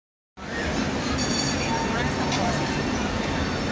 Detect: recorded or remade recorded